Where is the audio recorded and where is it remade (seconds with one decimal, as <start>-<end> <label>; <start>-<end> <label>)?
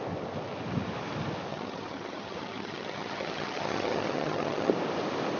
0.0-1.5 recorded; 1.5-4.7 remade; 4.7-5.4 recorded